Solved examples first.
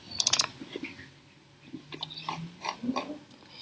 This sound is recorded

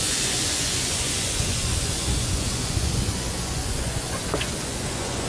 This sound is remade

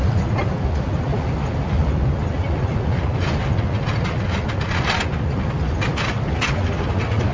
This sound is recorded